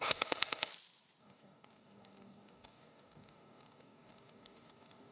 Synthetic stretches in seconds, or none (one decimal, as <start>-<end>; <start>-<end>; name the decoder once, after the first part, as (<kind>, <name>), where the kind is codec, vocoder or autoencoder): 0.0-0.7 (codec, DAC); 1.2-5.1